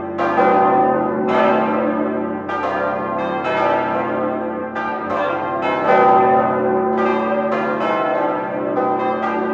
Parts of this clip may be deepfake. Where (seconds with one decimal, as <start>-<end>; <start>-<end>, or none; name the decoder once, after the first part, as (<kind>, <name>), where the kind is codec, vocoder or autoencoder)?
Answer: 0.8-1.5 (codec, DAC); 4.6-5.4